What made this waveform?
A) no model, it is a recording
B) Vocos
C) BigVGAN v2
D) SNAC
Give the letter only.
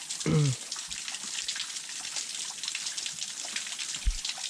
A